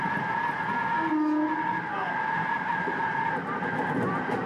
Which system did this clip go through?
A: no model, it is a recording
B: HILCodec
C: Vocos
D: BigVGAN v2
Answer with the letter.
A